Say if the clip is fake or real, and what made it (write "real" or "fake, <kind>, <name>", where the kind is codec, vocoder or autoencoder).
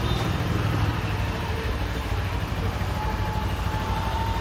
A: fake, vocoder, BigVGAN v2